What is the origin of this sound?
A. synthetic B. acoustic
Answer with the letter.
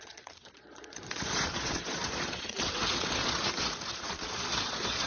A